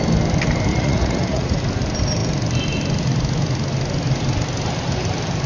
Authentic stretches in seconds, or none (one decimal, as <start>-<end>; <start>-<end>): 0.0-0.7; 1.6-5.5